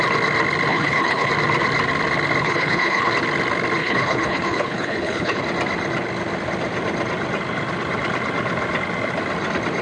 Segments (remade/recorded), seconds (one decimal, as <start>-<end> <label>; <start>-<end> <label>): 0.0-0.7 recorded; 0.7-1.3 remade; 1.3-2.4 recorded; 2.4-3.1 remade; 3.1-3.8 recorded; 3.8-5.4 remade; 5.4-9.8 recorded